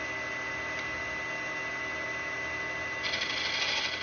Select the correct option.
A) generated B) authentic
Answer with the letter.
B